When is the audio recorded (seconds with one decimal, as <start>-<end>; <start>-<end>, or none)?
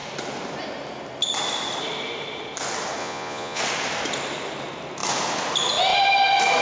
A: 0.0-3.0; 3.6-6.6